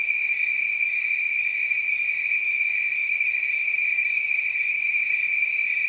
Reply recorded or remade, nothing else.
remade